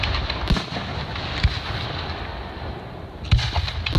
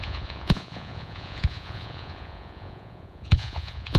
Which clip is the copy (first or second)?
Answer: second